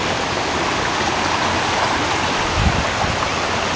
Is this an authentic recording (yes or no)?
yes